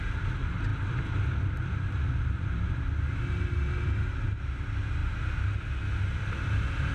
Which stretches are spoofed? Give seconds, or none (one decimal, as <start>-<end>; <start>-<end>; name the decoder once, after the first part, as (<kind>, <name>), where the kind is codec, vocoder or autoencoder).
none